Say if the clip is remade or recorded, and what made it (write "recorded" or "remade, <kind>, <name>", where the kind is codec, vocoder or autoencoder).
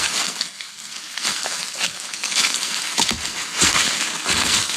remade, codec, SNAC